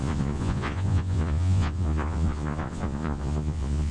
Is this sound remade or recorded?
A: remade